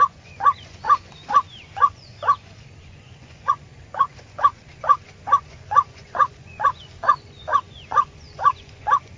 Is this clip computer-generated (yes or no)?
yes